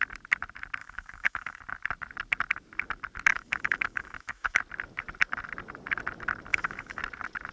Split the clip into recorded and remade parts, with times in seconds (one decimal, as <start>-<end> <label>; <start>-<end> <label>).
0.0-0.8 recorded; 0.8-1.6 remade; 1.6-3.3 recorded; 3.3-4.6 remade; 4.6-6.5 recorded; 6.5-7.0 remade; 7.0-7.5 recorded